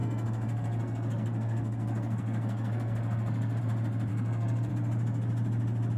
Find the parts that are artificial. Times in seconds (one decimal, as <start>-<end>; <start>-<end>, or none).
0.0-3.6; 4.1-4.7